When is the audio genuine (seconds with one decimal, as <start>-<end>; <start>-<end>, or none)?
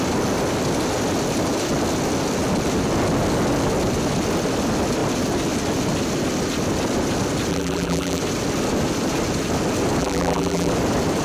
0.0-7.5; 8.2-10.0; 10.7-11.2